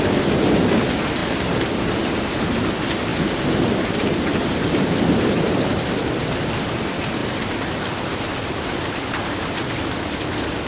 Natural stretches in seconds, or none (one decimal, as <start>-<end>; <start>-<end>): 0.0-1.2; 2.6-3.1; 6.0-7.2; 9.4-10.7